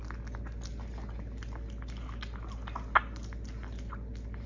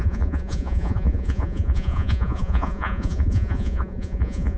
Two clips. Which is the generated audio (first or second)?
second